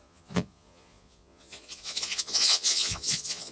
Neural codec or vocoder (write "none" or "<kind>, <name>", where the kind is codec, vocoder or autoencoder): vocoder, Vocos